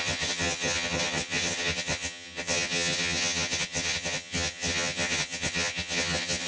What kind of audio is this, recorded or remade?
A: remade